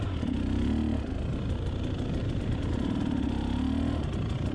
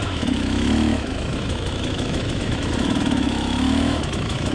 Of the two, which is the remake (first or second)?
second